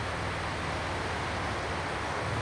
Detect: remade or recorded recorded